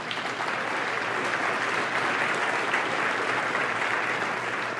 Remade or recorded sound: recorded